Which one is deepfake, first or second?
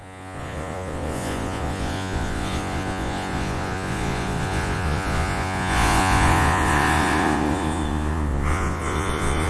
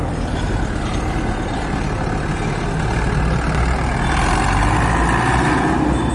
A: first